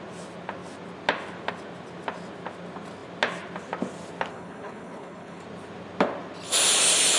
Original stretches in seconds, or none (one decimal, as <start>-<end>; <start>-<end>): 0.0-4.3; 5.4-7.2